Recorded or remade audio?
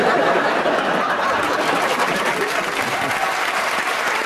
recorded